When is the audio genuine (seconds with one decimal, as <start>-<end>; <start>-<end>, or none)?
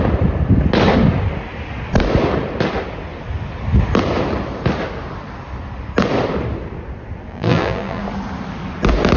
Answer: 0.0-7.3; 8.0-9.2